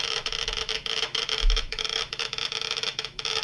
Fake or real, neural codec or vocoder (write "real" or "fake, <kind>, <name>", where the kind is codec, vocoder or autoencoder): fake, autoencoder, DAC-VAE